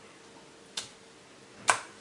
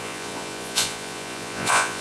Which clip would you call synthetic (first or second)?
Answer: second